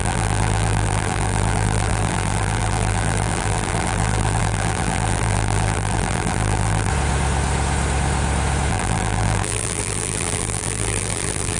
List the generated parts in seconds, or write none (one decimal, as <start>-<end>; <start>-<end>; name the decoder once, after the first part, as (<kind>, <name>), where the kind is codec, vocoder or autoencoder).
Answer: 0.0-6.9 (vocoder, BigVGAN v2); 8.7-11.6